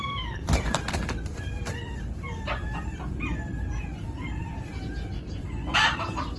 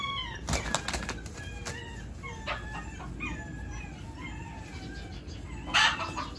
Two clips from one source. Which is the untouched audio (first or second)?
second